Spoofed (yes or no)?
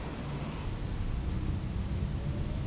no